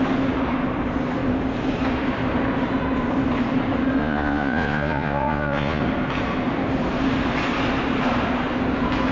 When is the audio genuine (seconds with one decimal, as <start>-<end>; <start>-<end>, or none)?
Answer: 0.0-4.0; 5.8-9.1